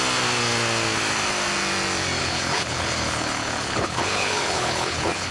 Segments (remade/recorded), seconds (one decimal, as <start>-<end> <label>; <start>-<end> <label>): 0.0-2.2 recorded; 2.2-5.3 remade